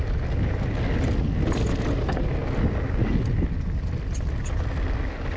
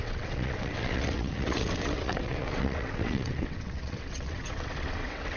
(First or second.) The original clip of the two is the first